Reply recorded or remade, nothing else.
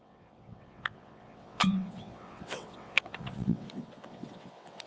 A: remade